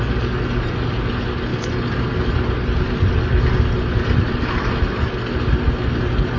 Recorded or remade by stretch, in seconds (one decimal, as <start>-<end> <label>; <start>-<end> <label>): 0.0-6.4 recorded